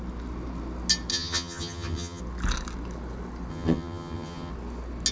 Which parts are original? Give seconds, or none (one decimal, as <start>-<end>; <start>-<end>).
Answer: 0.0-1.1; 2.2-3.5; 4.5-5.1